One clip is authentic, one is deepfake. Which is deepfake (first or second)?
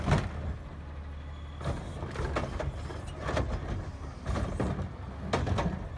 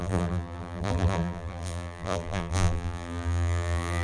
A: second